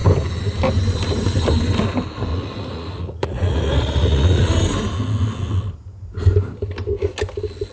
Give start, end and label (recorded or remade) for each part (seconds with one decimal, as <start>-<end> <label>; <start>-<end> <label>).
0.0-2.3 recorded; 2.3-4.5 remade; 4.5-7.7 recorded